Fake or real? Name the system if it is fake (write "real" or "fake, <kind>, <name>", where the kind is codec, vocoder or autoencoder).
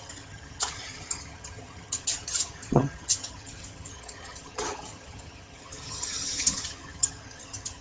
fake, vocoder, HiFi-GAN